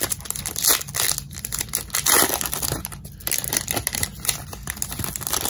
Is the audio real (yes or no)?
yes